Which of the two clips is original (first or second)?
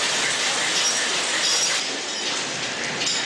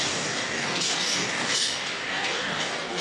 first